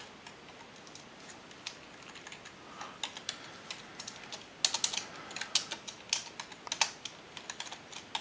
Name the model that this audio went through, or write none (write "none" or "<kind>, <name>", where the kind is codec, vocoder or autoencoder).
none